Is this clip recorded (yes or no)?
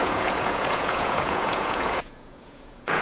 no